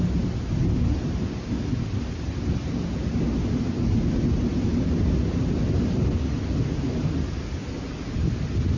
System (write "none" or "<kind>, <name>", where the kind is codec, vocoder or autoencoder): none